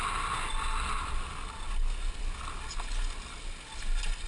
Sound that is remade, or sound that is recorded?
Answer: recorded